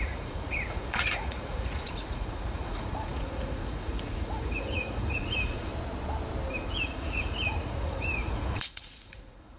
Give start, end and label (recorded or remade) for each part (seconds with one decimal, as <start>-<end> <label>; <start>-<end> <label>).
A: 0.0-5.7 remade; 5.7-6.5 recorded; 6.5-9.6 remade